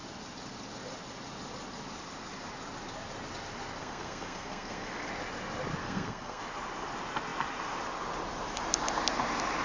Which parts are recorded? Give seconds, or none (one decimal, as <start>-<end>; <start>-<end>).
0.0-3.8; 5.1-5.8; 6.4-9.6